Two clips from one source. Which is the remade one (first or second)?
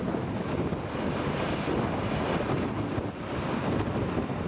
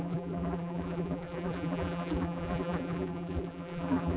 second